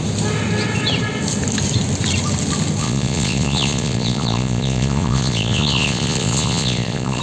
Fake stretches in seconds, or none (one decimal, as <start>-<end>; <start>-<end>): 2.8-7.2